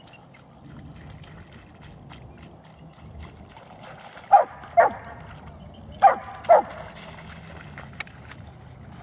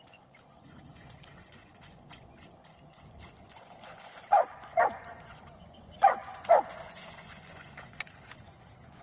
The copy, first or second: second